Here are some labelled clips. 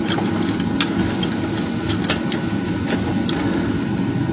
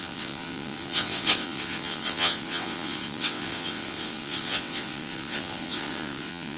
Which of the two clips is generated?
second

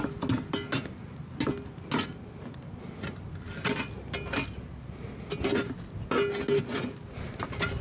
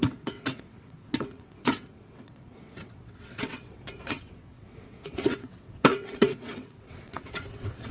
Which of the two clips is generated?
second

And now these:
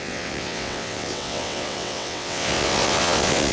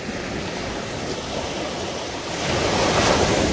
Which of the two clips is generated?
first